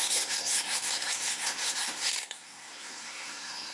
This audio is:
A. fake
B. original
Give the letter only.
A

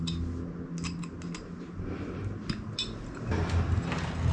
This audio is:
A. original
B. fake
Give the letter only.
A